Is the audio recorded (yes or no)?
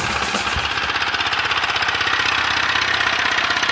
yes